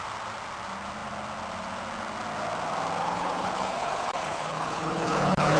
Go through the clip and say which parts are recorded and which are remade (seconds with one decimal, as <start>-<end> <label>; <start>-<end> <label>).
0.0-3.0 recorded; 3.0-5.6 remade